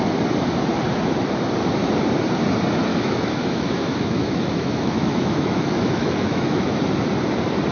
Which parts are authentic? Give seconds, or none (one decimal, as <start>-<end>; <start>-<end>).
0.0-2.9; 6.7-7.7